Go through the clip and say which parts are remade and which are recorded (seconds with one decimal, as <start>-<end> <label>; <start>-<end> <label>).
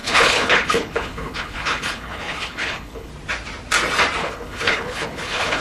0.0-3.1 remade; 3.1-4.2 recorded; 4.2-5.6 remade